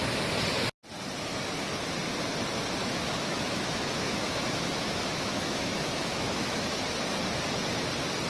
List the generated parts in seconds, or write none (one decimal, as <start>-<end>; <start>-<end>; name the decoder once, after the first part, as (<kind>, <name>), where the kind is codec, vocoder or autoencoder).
2.8-6.8 (autoencoder, DAC-VAE)